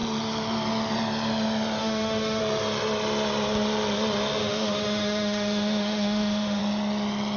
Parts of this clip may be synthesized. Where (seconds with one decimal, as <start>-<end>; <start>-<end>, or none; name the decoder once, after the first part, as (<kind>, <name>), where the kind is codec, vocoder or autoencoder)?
1.8-2.4 (autoencoder, DAC-VAE); 4.4-6.6